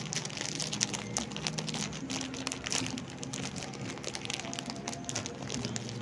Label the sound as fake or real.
real